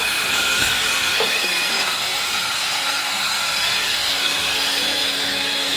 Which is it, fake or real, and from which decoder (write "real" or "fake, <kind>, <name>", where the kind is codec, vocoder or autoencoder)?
fake, codec, SNAC